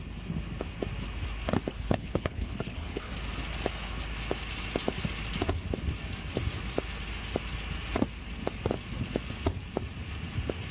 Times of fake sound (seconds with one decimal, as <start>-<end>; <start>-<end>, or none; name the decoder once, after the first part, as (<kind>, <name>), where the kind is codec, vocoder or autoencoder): 1.7-3.1 (codec, HILCodec)